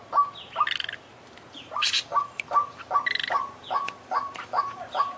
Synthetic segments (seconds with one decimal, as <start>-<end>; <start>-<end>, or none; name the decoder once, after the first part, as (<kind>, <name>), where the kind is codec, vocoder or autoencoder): 1.5-5.2 (vocoder, BigVGAN v2)